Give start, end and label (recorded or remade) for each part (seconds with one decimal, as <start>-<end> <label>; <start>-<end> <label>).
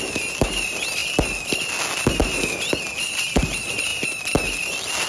0.0-5.1 recorded